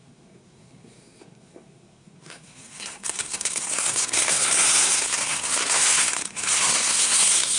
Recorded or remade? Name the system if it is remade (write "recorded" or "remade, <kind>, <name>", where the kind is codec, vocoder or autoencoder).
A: remade, codec, SNAC